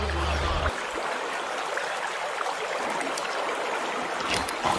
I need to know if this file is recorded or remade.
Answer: recorded